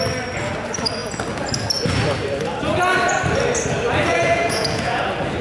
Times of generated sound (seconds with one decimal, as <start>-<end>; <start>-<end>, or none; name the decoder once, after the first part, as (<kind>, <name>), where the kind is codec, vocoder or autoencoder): 4.1-5.0 (vocoder, Vocos)